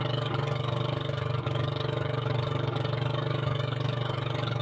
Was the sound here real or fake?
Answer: fake